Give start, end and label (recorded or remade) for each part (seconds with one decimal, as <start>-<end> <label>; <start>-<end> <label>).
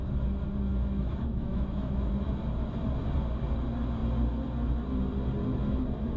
0.0-0.7 recorded; 0.7-2.1 remade; 2.1-6.2 recorded